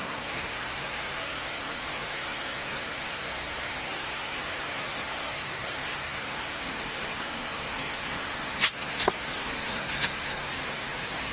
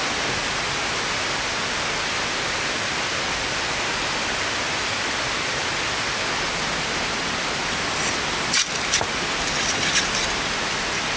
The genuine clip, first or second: second